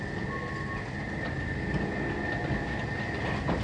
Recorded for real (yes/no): yes